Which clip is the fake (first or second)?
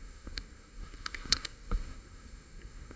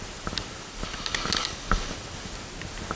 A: first